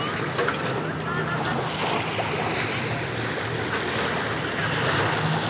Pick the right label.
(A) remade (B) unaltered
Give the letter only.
B